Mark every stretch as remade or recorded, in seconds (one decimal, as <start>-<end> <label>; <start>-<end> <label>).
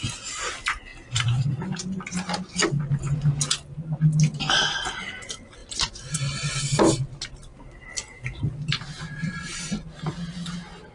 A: 0.0-0.9 recorded; 0.9-1.5 remade; 1.5-5.6 recorded; 5.6-6.6 remade; 6.6-7.5 recorded; 7.5-9.7 remade; 9.7-10.9 recorded